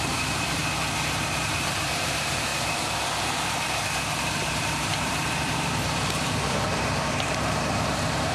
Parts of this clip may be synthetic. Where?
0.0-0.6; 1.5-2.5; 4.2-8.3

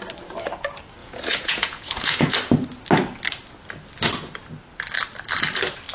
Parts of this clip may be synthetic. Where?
1.0-2.3